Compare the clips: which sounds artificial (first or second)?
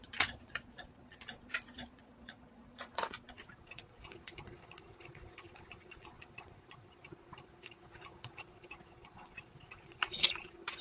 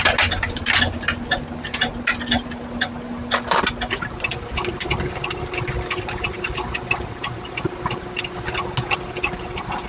first